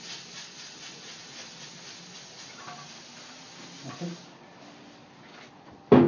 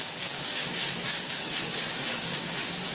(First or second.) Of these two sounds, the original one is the first